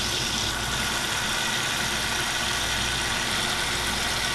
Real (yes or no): yes